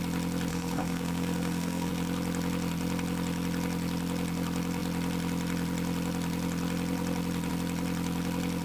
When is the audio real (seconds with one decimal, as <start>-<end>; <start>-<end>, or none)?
0.0-0.5; 1.9-8.6